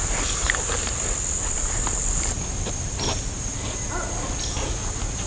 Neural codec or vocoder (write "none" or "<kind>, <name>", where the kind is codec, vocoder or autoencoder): none